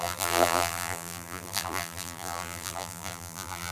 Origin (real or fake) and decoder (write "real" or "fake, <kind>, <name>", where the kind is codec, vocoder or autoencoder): fake, vocoder, BigVGAN v2